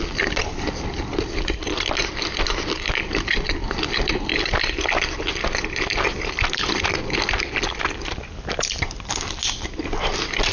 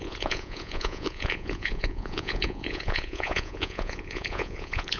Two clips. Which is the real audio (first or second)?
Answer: first